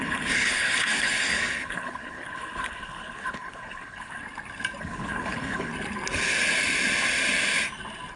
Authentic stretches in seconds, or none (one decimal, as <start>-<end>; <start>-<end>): 4.2-4.8; 5.7-8.2

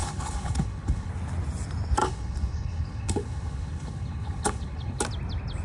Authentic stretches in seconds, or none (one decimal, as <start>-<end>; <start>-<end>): 1.1-2.0; 5.0-5.6

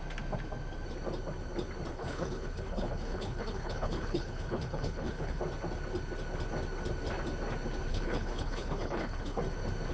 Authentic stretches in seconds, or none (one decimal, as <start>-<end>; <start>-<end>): 0.0-1.9; 5.4-7.9; 9.4-9.9

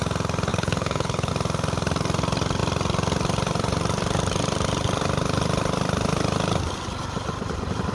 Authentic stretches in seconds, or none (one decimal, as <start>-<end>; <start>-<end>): 0.0-0.5; 1.3-7.9